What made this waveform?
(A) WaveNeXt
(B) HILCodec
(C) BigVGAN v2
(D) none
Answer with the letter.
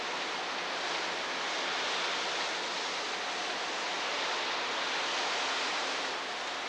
D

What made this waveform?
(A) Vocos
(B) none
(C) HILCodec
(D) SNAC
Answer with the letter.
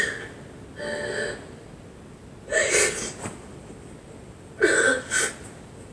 B